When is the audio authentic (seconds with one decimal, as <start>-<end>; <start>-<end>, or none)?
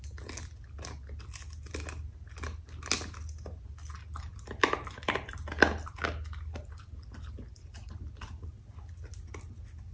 0.0-9.9